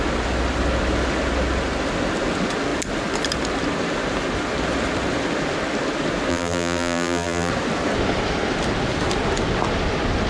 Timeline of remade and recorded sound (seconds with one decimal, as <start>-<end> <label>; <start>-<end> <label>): 0.0-6.3 recorded; 6.3-7.5 remade; 7.5-10.3 recorded